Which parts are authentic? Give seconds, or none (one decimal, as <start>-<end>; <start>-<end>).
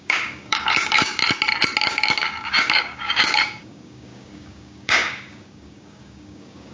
1.2-1.8